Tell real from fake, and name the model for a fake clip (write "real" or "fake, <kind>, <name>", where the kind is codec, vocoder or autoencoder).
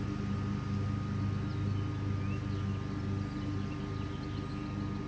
real